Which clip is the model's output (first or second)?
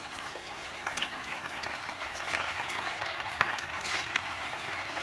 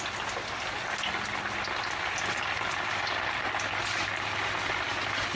first